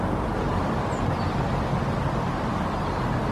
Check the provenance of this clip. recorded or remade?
recorded